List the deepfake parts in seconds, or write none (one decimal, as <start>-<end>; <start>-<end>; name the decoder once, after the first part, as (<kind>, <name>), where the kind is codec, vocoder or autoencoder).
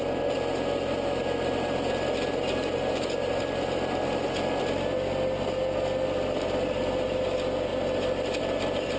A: none